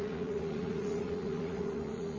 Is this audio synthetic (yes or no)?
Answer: yes